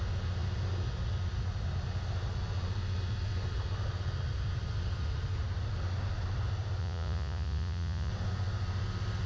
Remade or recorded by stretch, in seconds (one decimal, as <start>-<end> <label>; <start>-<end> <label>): 0.0-6.8 recorded; 6.8-8.1 remade; 8.1-9.3 recorded